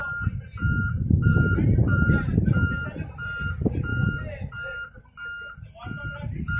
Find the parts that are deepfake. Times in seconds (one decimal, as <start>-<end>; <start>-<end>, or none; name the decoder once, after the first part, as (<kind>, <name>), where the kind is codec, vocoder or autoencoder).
0.0-3.9 (vocoder, BigVGAN v2)